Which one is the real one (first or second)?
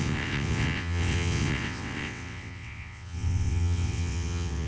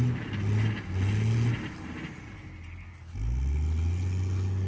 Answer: second